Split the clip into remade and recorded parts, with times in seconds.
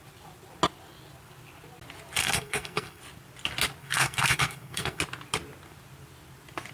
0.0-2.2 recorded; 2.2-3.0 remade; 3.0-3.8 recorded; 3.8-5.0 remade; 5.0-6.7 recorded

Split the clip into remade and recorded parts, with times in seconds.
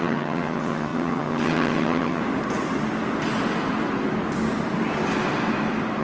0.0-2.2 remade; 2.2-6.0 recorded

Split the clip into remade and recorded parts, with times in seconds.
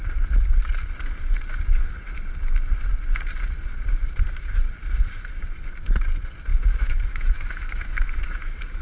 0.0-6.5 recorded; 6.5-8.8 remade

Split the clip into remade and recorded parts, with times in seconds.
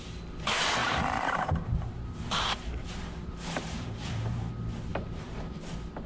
0.0-0.8 recorded; 0.8-4.5 remade; 4.5-4.9 recorded; 4.9-5.6 remade; 5.6-6.1 recorded